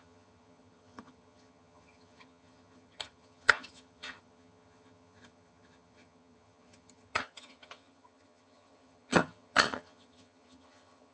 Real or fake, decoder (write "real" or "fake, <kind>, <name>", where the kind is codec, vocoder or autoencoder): fake, vocoder, HiFi-GAN